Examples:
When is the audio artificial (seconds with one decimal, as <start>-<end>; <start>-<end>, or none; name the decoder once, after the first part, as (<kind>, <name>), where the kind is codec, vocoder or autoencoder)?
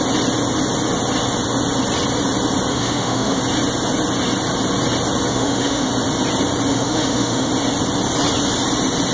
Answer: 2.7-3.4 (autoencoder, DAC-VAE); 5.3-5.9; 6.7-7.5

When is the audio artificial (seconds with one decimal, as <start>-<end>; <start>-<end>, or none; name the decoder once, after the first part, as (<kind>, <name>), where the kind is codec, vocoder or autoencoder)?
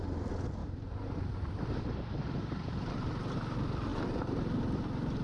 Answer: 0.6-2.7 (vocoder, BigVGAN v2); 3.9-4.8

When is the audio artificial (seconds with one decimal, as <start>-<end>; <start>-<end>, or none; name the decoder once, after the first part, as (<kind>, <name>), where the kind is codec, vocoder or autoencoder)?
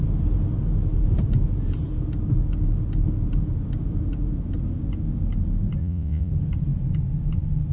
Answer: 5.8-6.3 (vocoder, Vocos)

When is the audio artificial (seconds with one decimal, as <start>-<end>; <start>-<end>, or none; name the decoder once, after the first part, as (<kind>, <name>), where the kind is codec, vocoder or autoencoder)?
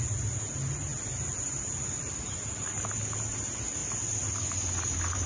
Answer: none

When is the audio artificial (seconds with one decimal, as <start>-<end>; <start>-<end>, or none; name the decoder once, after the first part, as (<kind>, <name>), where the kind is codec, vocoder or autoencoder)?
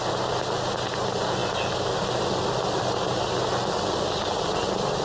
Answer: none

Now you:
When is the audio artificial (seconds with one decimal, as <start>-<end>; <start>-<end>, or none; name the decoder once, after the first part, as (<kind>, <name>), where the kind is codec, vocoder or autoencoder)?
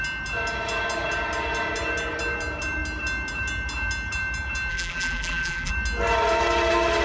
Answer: 4.7-5.7 (vocoder, BigVGAN v2)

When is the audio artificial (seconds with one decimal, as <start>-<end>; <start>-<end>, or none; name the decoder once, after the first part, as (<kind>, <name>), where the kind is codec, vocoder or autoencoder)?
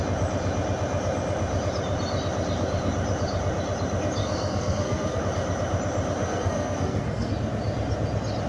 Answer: 4.2-5.2 (codec, SNAC); 6.2-7.3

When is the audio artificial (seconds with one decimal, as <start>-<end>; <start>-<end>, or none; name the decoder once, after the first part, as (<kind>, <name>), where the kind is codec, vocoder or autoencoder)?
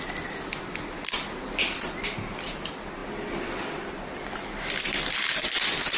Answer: none